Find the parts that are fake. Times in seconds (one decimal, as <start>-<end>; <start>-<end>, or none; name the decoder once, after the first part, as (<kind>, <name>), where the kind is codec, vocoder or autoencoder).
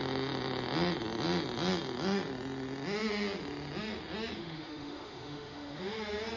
4.4-6.0 (autoencoder, DAC-VAE)